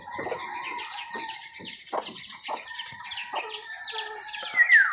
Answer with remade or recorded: remade